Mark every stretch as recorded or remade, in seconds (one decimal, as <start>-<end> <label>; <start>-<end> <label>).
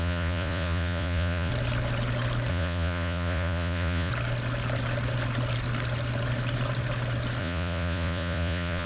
0.0-1.5 remade; 1.5-2.5 recorded; 2.5-4.1 remade; 4.1-7.4 recorded; 7.4-8.9 remade